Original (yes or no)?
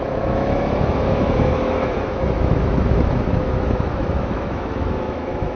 no